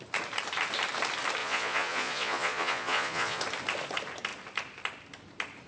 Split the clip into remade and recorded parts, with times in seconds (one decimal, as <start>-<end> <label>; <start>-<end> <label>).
0.0-1.4 recorded; 1.4-3.4 remade; 3.4-5.7 recorded